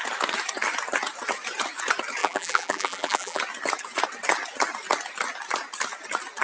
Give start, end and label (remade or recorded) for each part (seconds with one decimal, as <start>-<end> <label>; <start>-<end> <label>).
0.0-2.2 recorded; 2.2-3.4 remade; 3.4-6.4 recorded